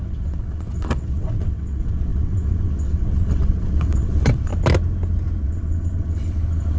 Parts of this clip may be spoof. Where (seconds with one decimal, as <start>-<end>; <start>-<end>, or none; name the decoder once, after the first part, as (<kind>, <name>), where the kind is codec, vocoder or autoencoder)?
0.0-4.5 (vocoder, WaveNeXt); 5.4-6.8